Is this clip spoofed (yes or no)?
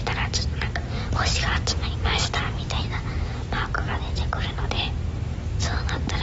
no